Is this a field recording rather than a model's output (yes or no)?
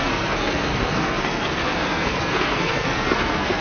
no